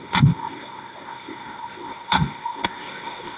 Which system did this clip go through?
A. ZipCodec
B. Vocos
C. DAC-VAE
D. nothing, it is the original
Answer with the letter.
A